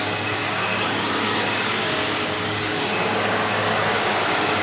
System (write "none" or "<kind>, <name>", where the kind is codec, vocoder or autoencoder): codec, DAC